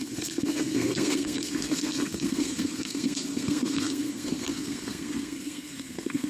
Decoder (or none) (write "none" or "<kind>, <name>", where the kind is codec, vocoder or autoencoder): codec, SNAC